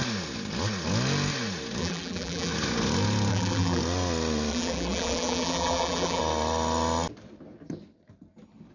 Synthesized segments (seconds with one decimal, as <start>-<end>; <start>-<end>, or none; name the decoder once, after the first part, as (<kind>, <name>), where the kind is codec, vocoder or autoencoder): 1.8-2.5 (vocoder, BigVGAN v2); 3.3-3.8; 4.5-6.2